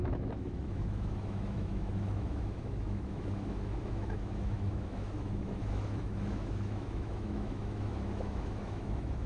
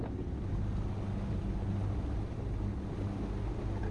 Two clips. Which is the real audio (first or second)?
second